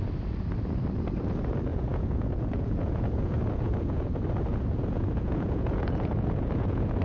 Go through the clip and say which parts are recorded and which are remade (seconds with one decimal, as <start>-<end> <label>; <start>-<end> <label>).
0.0-1.7 recorded; 1.7-4.1 remade; 4.1-4.5 recorded; 4.5-7.0 remade